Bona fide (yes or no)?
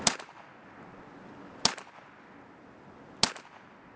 yes